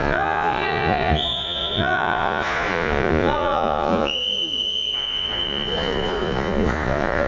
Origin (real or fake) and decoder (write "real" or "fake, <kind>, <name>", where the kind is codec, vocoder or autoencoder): fake, vocoder, Vocos